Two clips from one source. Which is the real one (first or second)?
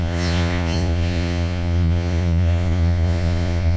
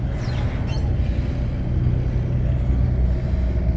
second